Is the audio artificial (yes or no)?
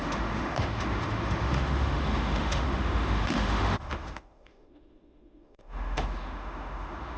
yes